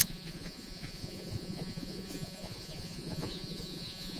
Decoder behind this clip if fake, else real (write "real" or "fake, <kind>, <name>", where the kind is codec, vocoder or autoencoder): fake, vocoder, Vocos